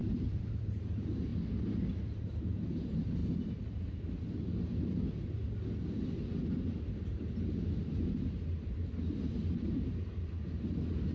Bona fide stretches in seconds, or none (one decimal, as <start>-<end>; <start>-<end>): 1.3-2.0; 3.2-6.9